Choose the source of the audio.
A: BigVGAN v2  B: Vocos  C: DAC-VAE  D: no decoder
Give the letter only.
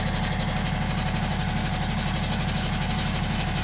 D